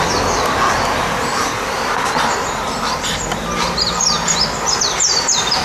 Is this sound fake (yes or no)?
no